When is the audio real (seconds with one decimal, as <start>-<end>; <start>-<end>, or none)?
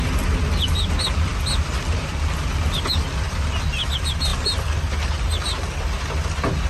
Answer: 0.0-6.7